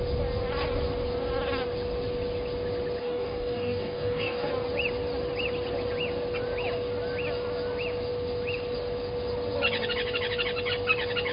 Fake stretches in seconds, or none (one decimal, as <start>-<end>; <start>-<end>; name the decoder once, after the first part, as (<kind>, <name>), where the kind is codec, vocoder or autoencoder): 3.0-4.5 (codec, DAC)